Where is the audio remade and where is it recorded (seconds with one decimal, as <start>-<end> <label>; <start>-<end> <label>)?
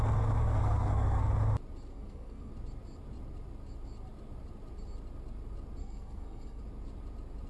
0.0-0.4 recorded; 0.4-1.3 remade; 1.3-1.9 recorded; 1.9-2.5 remade; 2.5-5.8 recorded; 5.8-6.6 remade; 6.6-7.5 recorded